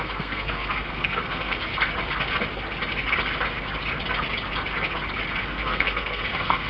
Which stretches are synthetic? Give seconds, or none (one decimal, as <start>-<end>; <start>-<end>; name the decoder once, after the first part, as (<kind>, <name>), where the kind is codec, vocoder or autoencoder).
0.0-1.7 (codec, SNAC); 5.4-6.7

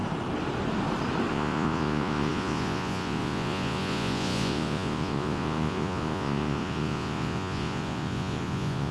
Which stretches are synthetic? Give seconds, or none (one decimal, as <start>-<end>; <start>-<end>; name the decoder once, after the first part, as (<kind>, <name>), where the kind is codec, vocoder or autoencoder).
1.3-8.9 (vocoder, Vocos)

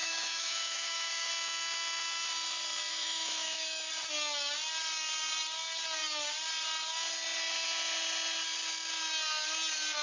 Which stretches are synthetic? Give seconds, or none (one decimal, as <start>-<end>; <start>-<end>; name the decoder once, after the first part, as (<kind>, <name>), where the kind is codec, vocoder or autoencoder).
0.0-1.3 (autoencoder, DAC-VAE); 2.9-3.9